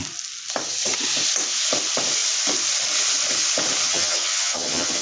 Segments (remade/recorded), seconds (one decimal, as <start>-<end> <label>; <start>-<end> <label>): 0.0-3.8 recorded; 3.8-5.0 remade